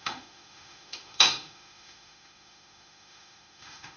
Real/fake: fake